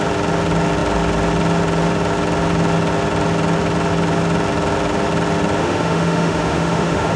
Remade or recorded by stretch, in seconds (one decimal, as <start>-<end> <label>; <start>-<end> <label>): 0.0-5.6 recorded; 5.6-7.2 remade